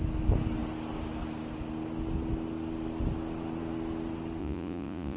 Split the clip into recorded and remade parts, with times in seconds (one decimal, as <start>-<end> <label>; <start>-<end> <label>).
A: 0.0-4.4 recorded; 4.4-5.2 remade